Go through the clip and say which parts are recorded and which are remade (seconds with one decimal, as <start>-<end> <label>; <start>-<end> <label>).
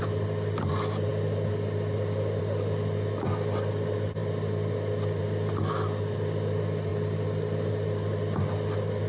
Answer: 0.0-9.1 recorded